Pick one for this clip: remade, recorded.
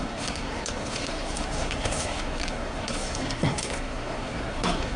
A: remade